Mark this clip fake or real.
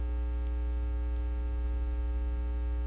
real